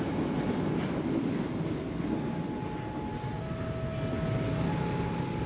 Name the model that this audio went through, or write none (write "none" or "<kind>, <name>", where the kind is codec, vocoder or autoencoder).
none